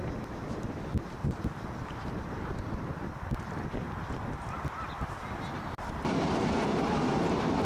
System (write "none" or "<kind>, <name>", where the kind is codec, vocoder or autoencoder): none